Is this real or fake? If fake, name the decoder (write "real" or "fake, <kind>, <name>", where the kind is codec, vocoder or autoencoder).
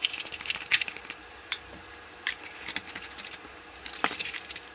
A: fake, vocoder, BigVGAN v2